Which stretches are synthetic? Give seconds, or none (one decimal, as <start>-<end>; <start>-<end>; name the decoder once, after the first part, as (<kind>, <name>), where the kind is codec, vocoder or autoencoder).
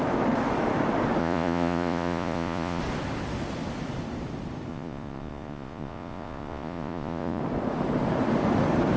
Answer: 1.2-2.8 (vocoder, Vocos); 4.7-7.4